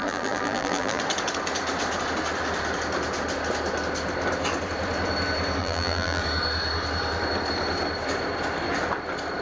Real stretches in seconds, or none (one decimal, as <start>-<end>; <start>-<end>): 1.0-5.6; 6.2-9.4